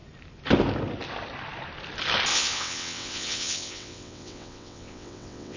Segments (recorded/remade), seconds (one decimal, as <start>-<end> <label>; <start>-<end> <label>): 0.0-2.3 recorded; 2.3-5.6 remade

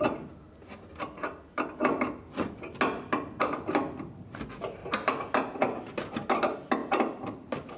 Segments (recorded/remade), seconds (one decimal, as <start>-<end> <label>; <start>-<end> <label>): 0.0-7.8 recorded

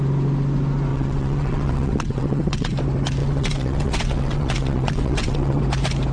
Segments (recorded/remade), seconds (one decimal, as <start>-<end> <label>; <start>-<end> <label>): 0.0-0.9 recorded; 0.9-2.7 remade; 2.7-3.2 recorded; 3.2-5.6 remade; 5.6-6.1 recorded

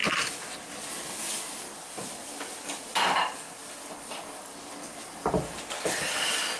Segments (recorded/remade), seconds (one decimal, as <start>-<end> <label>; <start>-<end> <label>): 0.0-6.6 recorded

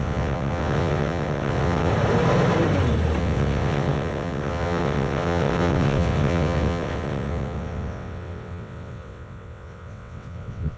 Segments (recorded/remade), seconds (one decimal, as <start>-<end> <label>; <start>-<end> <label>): 0.0-1.9 remade; 1.9-3.2 recorded; 3.2-10.8 remade